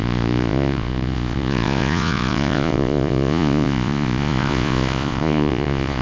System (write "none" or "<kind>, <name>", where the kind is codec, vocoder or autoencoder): vocoder, Vocos